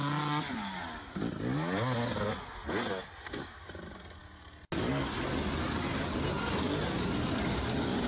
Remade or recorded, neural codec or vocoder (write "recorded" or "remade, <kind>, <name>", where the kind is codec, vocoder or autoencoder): recorded